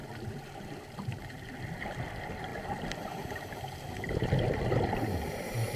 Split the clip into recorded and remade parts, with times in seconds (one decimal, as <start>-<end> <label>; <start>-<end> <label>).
0.0-1.5 remade; 1.5-2.5 recorded; 2.5-4.4 remade; 4.4-5.8 recorded